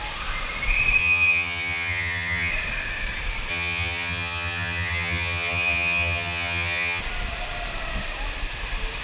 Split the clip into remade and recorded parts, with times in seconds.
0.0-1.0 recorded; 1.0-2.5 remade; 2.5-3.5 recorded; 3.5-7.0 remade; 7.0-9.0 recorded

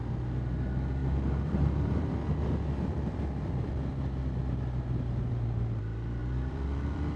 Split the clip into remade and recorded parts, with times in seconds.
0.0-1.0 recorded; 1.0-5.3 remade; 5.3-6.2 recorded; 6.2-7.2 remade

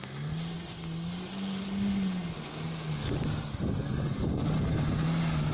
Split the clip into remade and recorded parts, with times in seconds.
0.0-5.5 recorded

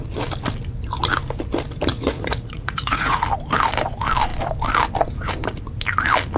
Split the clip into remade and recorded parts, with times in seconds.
0.0-1.9 recorded; 1.9-3.2 remade; 3.2-6.4 recorded

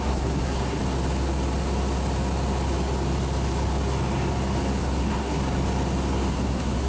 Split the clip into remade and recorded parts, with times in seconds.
0.0-0.8 remade; 0.8-4.8 recorded; 4.8-5.4 remade; 5.4-6.3 recorded; 6.3-6.9 remade